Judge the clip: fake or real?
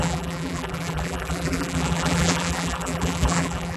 fake